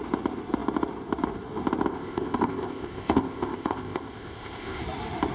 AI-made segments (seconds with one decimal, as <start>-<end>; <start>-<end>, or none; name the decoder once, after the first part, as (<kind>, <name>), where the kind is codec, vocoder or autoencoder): 1.9-4.8 (codec, ZipCodec)